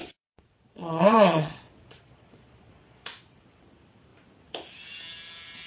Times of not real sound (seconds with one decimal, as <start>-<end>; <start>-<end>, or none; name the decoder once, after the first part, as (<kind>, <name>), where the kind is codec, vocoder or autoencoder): 0.0-3.4 (vocoder, Vocos)